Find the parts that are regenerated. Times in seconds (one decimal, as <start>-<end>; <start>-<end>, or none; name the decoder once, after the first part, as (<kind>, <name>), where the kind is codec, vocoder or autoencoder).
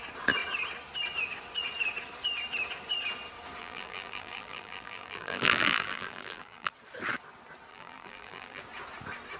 3.6-6.7 (vocoder, BigVGAN v2); 7.7-8.6